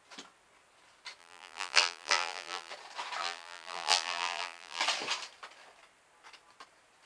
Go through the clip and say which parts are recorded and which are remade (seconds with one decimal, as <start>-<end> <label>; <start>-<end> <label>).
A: 0.0-1.2 recorded; 1.2-2.7 remade; 2.7-3.2 recorded; 3.2-4.8 remade; 4.8-7.1 recorded

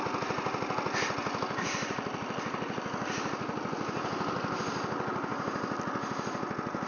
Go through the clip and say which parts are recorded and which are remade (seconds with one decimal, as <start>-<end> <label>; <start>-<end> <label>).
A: 0.0-1.2 recorded; 1.2-3.3 remade; 3.3-6.9 recorded

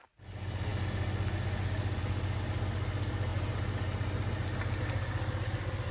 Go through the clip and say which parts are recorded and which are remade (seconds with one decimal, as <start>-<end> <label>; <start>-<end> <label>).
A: 0.0-5.9 recorded

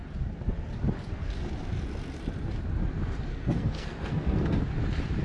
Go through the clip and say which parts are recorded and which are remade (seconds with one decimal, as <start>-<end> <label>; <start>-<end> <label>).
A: 0.0-3.3 recorded; 3.3-4.6 remade; 4.6-5.2 recorded

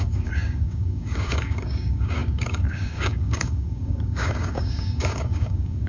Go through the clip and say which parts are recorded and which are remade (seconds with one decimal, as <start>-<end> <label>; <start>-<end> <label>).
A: 0.0-5.9 remade

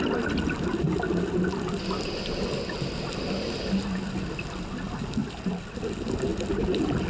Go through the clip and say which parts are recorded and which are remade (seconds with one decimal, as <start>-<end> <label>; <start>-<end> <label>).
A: 0.0-5.2 recorded; 5.2-5.8 remade; 5.8-6.3 recorded; 6.3-7.1 remade

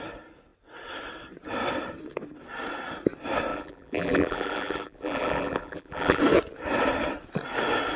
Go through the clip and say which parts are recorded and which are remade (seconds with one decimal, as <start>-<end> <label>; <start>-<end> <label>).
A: 0.0-3.5 recorded; 3.5-6.2 remade; 6.2-8.0 recorded

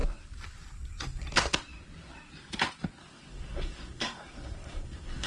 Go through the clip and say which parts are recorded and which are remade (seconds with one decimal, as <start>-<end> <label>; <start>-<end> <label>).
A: 0.0-3.0 recorded; 3.0-5.3 remade